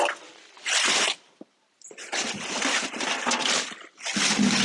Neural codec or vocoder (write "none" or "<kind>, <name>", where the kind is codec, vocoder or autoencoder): none